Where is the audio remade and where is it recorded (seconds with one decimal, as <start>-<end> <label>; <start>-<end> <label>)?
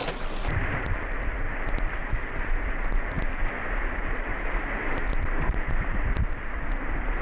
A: 0.0-7.2 recorded